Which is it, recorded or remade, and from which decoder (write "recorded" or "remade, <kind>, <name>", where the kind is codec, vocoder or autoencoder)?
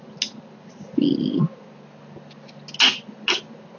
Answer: recorded